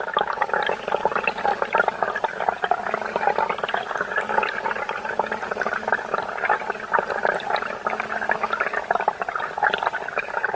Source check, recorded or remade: recorded